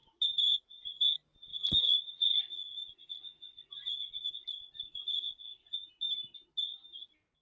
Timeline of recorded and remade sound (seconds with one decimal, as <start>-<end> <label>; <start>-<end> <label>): 0.0-1.5 recorded; 1.5-5.9 remade; 5.9-7.4 recorded